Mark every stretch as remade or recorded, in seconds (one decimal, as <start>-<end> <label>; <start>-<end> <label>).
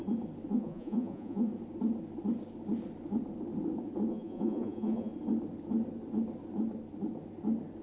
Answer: 0.0-0.5 recorded; 0.5-1.5 remade; 1.5-4.1 recorded; 4.1-5.1 remade; 5.1-7.8 recorded